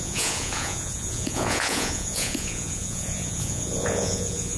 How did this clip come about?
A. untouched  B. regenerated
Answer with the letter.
B